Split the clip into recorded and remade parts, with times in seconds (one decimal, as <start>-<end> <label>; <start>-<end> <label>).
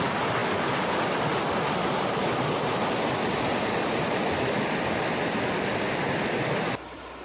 0.0-7.2 recorded